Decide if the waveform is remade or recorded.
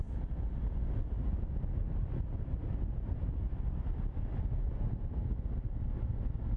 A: recorded